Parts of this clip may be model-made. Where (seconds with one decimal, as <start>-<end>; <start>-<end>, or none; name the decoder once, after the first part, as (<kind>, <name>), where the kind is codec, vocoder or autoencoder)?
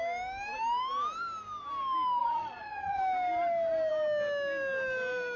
2.2-3.0 (vocoder, Vocos)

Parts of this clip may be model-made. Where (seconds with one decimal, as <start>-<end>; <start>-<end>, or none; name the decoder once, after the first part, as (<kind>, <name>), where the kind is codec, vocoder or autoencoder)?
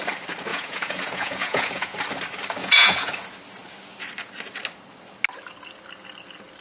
0.5-2.0 (vocoder, Vocos); 2.6-3.1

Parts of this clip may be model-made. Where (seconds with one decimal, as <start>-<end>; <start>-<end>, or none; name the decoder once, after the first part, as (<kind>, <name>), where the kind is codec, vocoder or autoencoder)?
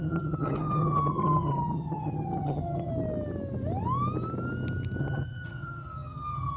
0.0-2.9 (vocoder, HiFi-GAN); 5.0-6.6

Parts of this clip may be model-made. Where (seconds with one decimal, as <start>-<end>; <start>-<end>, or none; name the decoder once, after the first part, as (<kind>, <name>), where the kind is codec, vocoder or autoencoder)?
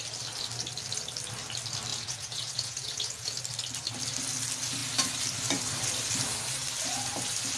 1.9-3.4 (vocoder, Vocos)